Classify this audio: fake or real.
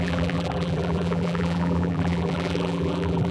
fake